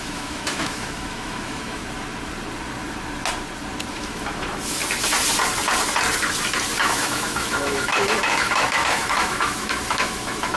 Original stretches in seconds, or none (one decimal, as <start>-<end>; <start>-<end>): 1.8-3.9; 4.8-6.8